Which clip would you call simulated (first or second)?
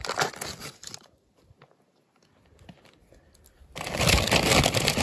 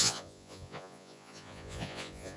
second